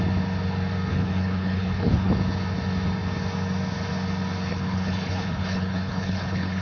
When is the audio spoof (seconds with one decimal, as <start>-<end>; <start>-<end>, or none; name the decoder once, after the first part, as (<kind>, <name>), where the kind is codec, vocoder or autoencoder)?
0.9-2.1 (codec, HILCodec); 4.5-6.6